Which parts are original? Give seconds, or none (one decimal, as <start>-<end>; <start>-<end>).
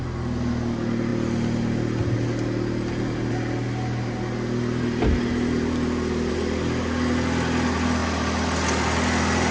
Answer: 0.0-9.5